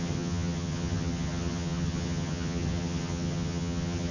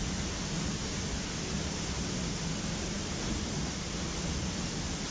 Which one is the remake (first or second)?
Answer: first